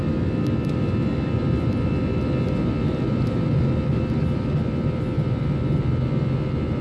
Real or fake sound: real